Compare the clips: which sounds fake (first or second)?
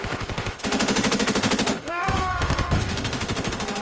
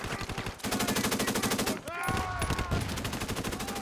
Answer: first